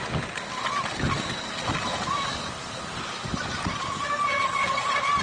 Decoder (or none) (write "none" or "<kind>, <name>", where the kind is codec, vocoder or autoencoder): none